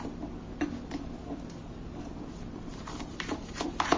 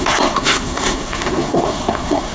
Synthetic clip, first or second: second